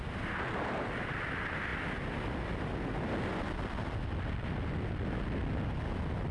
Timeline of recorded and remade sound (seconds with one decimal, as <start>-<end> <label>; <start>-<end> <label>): 0.0-6.3 recorded